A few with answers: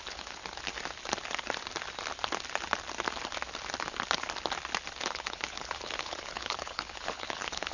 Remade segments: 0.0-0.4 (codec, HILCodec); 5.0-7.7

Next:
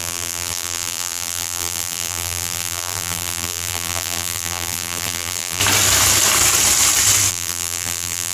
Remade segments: 0.0-5.6 (vocoder, BigVGAN v2); 7.3-8.3

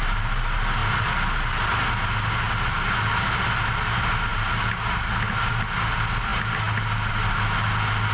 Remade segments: none

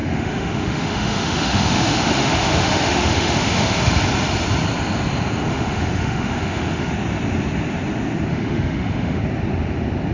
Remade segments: 0.0-3.9 (autoencoder, DAC-VAE); 5.5-6.9; 8.3-9.2

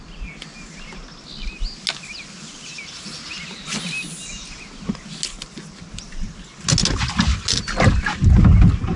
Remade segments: none